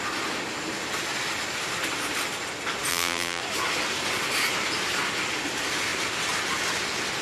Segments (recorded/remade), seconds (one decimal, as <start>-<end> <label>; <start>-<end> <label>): 0.0-2.9 recorded; 2.9-3.4 remade; 3.4-7.2 recorded